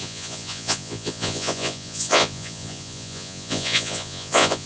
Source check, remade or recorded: remade